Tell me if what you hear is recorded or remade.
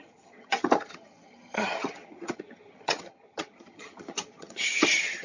remade